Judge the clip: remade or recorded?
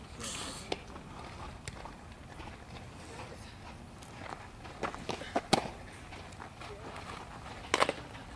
recorded